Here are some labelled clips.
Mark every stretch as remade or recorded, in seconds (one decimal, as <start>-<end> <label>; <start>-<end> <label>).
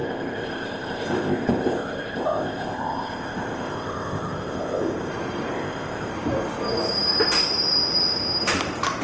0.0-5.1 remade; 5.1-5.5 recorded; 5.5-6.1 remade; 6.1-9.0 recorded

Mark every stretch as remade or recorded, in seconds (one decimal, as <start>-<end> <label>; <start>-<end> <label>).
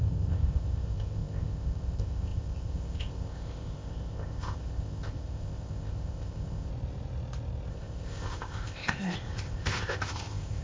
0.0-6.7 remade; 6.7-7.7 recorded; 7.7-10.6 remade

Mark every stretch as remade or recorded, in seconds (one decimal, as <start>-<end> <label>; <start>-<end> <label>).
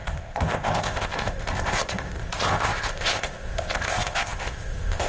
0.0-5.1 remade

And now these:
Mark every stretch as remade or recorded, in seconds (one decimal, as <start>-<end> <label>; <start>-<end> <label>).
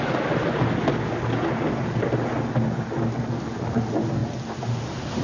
0.0-5.2 recorded